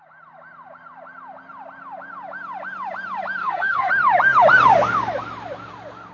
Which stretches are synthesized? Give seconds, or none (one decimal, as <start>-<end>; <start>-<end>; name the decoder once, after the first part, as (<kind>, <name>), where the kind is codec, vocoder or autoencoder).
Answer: 3.4-3.9 (codec, SNAC)